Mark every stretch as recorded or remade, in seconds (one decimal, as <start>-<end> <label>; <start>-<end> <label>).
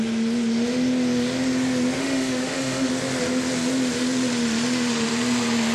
0.0-2.0 recorded; 2.0-2.9 remade; 2.9-5.7 recorded